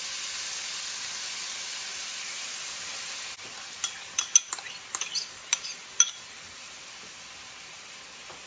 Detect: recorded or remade recorded